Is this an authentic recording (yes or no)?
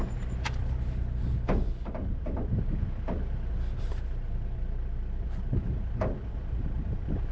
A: yes